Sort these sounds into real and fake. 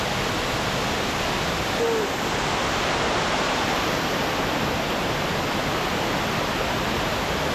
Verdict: real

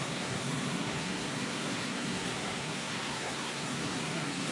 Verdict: fake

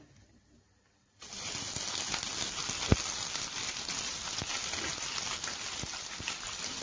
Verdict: real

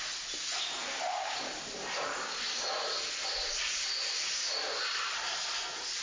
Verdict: real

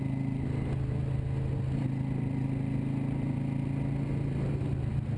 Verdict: real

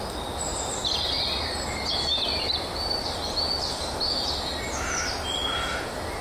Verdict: real